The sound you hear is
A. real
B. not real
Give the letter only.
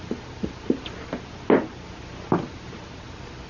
A